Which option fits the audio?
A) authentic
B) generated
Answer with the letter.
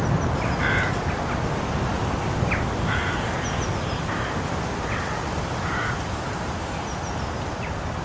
A